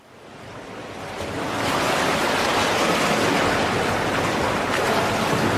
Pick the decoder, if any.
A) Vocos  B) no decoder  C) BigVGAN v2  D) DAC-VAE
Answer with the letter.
B